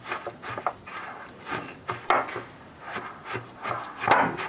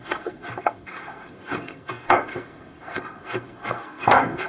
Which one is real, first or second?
first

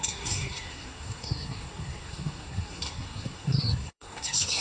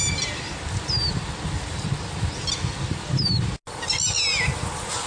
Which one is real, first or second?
second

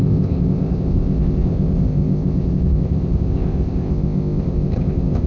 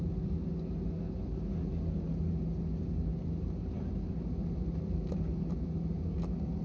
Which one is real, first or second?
second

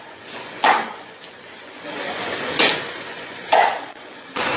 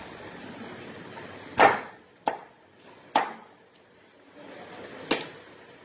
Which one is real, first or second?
second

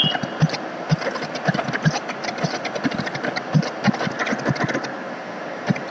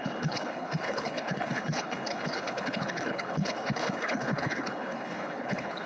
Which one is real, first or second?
first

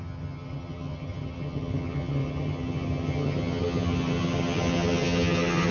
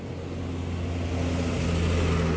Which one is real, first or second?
second